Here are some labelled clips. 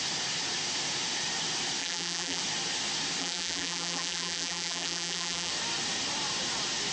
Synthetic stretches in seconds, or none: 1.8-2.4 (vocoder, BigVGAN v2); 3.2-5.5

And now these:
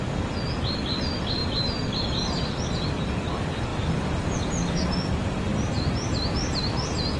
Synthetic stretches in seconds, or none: 1.4-2.6 (vocoder, BigVGAN v2)

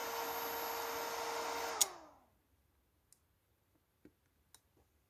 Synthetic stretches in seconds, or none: none

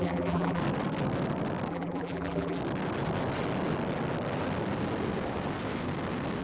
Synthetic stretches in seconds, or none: 0.0-0.6 (vocoder, BigVGAN v2); 1.7-2.6

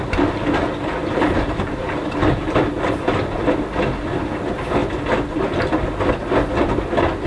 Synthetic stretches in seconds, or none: 1.0-3.0 (vocoder, BigVGAN v2)